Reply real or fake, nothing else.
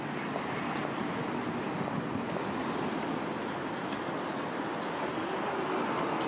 real